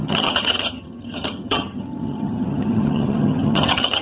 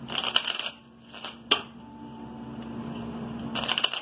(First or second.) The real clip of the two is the second